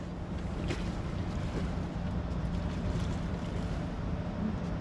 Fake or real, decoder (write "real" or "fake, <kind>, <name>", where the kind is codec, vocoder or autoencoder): real